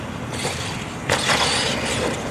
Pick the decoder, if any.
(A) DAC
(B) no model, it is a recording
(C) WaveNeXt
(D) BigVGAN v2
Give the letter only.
B